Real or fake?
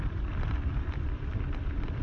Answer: fake